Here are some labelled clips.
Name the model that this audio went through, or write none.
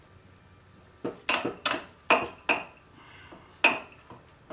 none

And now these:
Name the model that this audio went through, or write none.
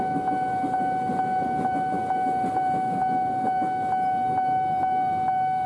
none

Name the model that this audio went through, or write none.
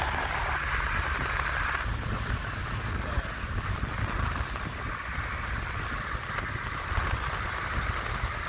none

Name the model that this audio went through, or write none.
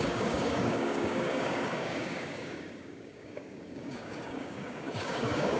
codec, DAC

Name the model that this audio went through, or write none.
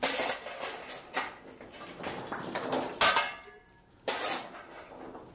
none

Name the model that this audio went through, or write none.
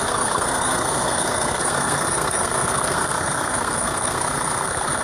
codec, SNAC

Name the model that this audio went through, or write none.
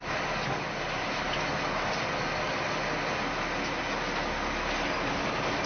none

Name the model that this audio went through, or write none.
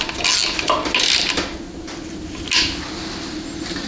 none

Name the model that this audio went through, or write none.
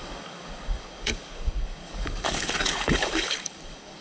codec, DAC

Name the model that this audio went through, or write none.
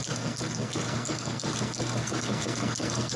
codec, SNAC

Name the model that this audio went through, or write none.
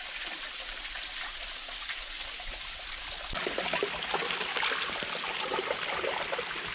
none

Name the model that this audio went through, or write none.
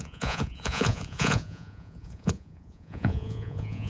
vocoder, Vocos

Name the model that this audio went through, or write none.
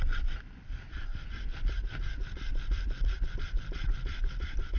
none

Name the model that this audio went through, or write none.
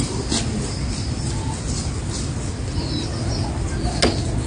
none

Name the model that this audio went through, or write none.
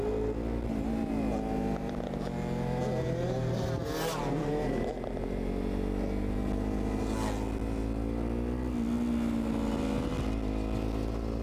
none